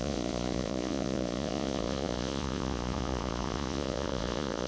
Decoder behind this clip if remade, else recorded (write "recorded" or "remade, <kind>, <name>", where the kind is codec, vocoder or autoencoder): remade, vocoder, Vocos